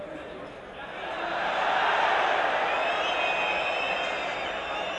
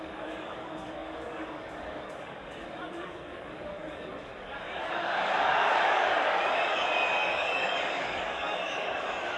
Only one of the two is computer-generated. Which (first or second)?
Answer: second